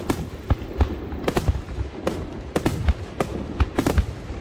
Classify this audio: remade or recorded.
recorded